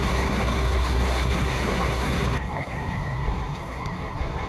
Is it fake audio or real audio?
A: fake